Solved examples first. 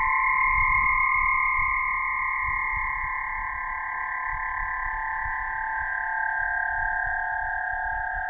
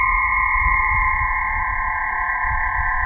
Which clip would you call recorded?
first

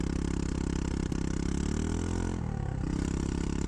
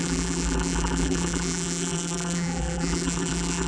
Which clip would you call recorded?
first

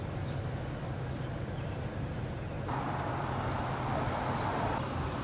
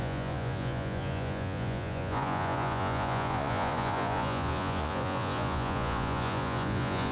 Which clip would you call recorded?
first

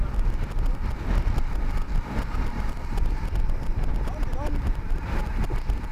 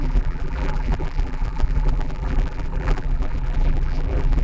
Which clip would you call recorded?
first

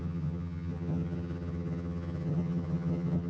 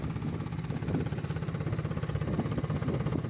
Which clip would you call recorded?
second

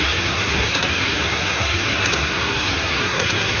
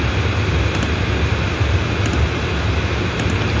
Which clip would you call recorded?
second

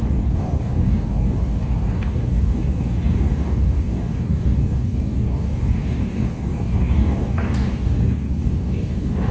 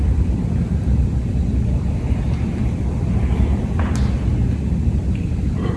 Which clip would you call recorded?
second